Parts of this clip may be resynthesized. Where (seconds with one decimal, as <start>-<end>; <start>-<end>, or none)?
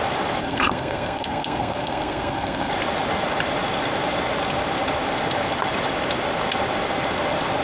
0.4-2.7